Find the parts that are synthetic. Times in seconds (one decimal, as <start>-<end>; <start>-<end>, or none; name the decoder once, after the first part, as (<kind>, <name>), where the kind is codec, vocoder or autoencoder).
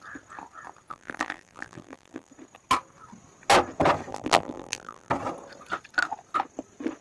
0.9-2.3 (vocoder, BigVGAN v2); 4.1-5.1